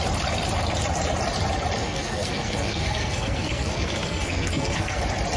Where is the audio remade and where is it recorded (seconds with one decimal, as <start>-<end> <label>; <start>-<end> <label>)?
0.0-1.8 recorded; 1.8-5.0 remade; 5.0-5.4 recorded